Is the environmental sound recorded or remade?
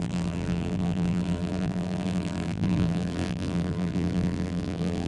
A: remade